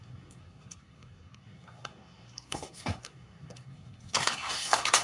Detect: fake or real fake